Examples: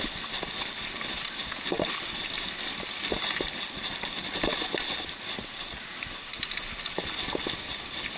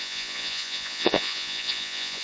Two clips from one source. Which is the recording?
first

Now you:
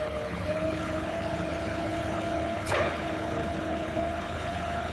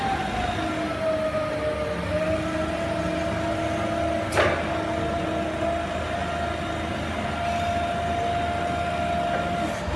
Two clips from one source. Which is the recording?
second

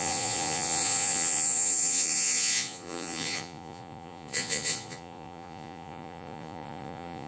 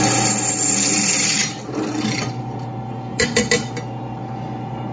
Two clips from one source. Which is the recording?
second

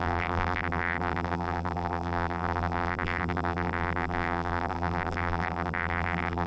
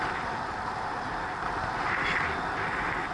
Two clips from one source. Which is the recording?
second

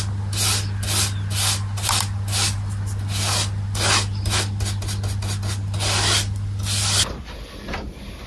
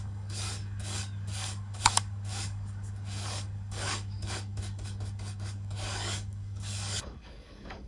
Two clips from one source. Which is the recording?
first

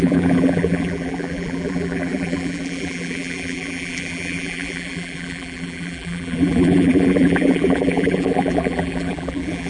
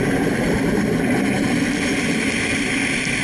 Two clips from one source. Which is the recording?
second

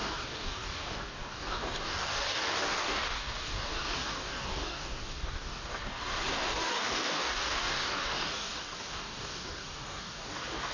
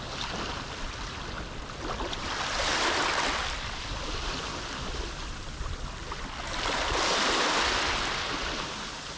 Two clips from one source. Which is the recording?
second